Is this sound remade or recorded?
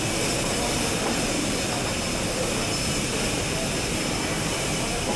recorded